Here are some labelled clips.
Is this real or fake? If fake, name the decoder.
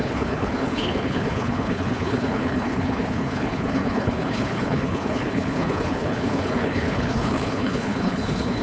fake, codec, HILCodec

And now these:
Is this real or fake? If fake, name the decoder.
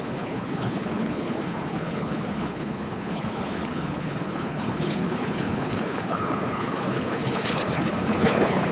fake, codec, HILCodec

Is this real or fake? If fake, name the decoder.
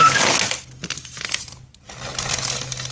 real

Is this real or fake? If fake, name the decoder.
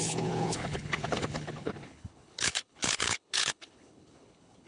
fake, codec, HILCodec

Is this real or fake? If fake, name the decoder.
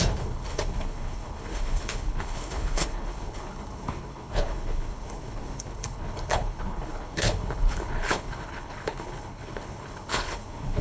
fake, codec, HILCodec